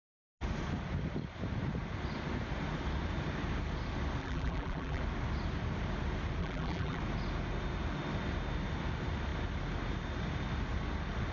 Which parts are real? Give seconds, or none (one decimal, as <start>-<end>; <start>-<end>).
0.0-4.2; 5.0-6.4; 7.0-11.3